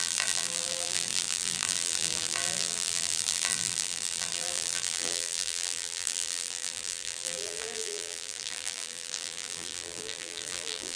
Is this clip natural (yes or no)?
no